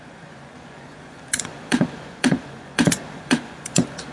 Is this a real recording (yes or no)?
no